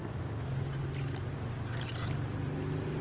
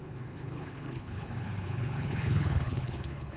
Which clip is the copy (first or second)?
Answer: second